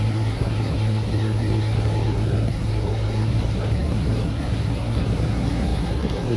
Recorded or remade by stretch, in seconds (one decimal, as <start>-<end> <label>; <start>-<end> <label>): 0.0-6.4 remade